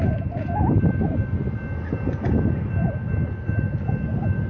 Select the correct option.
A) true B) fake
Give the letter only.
A